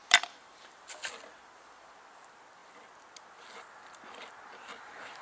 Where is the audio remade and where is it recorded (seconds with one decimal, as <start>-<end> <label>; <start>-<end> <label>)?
0.0-0.8 remade; 0.8-1.4 recorded; 1.4-1.9 remade; 1.9-5.2 recorded